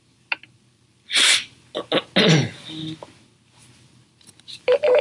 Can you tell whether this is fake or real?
real